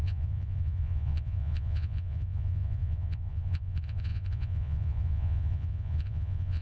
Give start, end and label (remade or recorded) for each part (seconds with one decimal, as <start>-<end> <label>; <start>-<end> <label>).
0.0-6.6 remade